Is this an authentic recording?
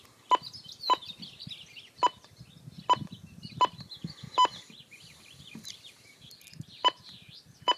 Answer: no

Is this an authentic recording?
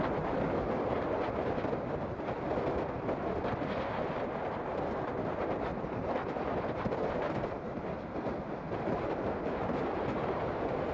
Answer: yes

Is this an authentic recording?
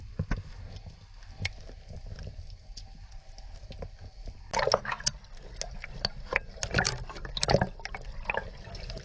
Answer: yes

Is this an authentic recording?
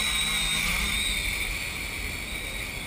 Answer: yes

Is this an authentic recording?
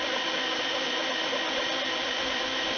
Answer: no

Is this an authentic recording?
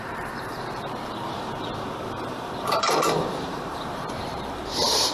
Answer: no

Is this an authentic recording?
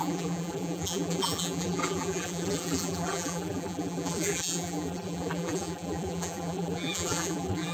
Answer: no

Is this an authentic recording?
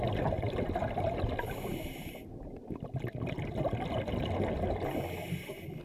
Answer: yes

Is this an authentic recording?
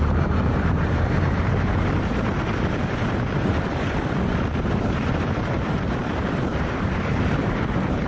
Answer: no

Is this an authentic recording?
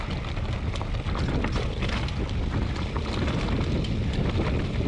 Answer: yes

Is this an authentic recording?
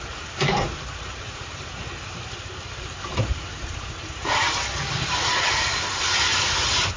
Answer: no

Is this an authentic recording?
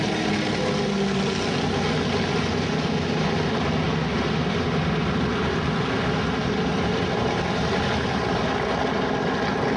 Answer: yes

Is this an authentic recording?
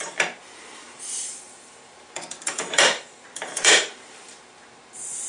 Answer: no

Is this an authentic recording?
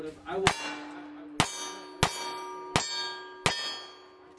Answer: yes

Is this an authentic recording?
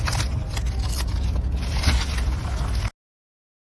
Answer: yes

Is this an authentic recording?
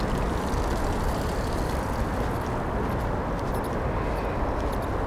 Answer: yes